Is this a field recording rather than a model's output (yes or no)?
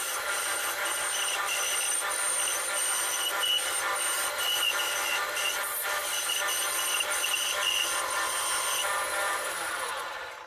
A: yes